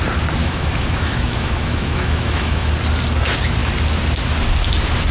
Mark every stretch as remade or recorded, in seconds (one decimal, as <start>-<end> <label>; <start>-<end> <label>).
0.0-0.4 recorded; 0.4-2.7 remade; 2.7-5.1 recorded